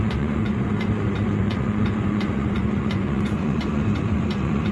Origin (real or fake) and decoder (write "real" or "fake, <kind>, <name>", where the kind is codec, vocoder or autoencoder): fake, vocoder, Vocos